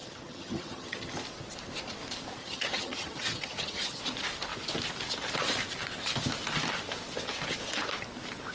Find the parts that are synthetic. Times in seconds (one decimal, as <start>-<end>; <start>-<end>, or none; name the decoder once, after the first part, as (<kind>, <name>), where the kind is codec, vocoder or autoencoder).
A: 0.0-1.1 (vocoder, HiFi-GAN); 2.4-4.0